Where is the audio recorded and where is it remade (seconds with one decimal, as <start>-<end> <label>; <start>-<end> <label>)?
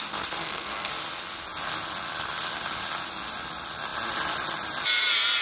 0.0-0.4 recorded; 0.4-0.9 remade; 0.9-5.4 recorded